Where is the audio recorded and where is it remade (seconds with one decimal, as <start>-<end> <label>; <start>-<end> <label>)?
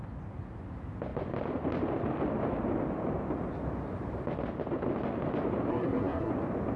0.0-5.7 recorded; 5.7-6.3 remade; 6.3-6.8 recorded